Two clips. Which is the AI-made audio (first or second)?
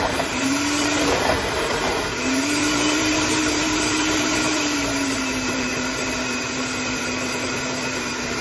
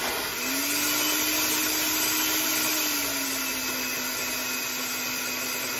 first